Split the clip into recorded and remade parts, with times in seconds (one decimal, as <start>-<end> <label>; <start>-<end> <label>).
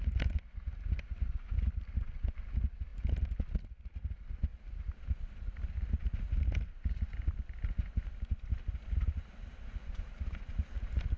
0.0-11.2 recorded